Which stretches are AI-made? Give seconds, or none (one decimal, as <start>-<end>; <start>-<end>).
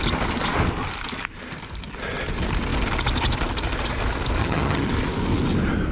4.4-4.9